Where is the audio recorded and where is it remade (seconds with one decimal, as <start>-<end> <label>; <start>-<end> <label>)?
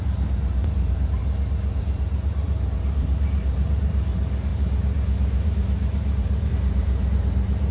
0.0-1.2 remade; 1.2-1.8 recorded; 1.8-7.7 remade